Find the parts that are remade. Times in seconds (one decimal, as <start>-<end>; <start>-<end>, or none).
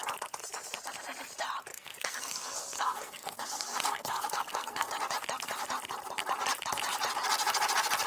1.7-4.9